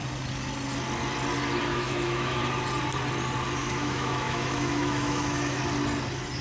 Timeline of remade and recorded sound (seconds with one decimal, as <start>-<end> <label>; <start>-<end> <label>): 0.0-1.7 recorded; 1.7-2.4 remade; 2.4-3.6 recorded; 3.6-5.6 remade; 5.6-6.4 recorded